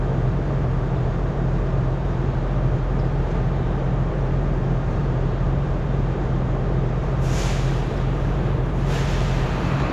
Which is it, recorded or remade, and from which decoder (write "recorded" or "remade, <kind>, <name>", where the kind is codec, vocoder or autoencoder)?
remade, vocoder, BigVGAN v2